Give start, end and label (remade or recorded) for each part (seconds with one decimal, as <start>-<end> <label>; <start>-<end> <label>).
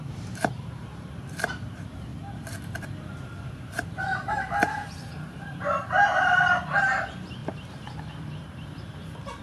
0.0-2.1 remade; 2.1-2.8 recorded; 2.8-7.4 remade; 7.4-8.2 recorded; 8.2-9.4 remade